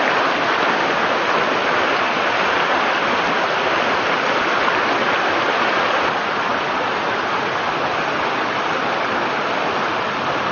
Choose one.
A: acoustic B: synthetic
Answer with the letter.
A